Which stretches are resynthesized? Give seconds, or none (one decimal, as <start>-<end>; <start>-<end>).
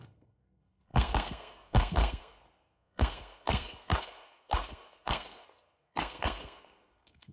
0.0-7.3